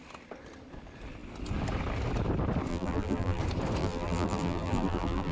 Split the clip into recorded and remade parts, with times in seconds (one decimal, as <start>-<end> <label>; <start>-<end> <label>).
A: 0.0-2.7 recorded; 2.7-3.4 remade; 3.4-3.8 recorded; 3.8-5.3 remade